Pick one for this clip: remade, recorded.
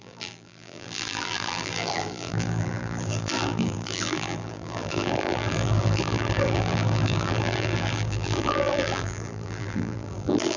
remade